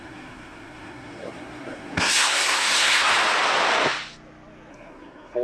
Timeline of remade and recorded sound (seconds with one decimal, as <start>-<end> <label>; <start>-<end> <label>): 0.0-3.1 remade; 3.1-4.7 recorded; 4.7-5.4 remade